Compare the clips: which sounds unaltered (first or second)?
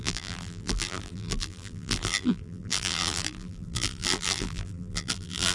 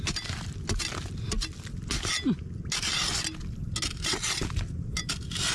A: second